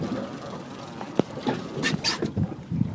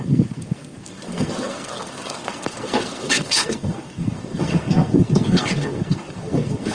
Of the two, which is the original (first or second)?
first